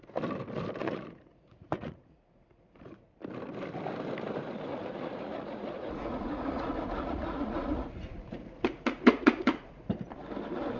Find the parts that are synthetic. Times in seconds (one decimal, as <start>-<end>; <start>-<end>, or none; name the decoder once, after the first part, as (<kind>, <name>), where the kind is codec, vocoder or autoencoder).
0.8-3.1 (vocoder, Vocos); 4.7-9.9